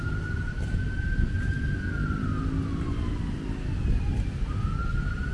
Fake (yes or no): no